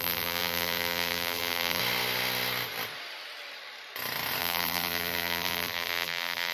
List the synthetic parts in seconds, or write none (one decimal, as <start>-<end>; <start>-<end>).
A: 0.0-1.8; 4.4-6.5